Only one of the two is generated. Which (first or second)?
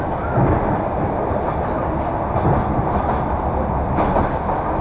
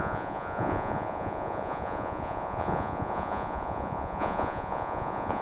second